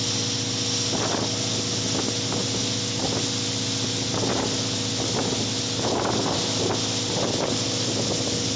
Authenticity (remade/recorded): recorded